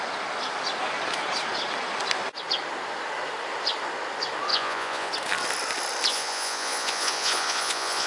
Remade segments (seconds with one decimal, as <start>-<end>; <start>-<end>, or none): 4.5-5.1; 6.1-8.1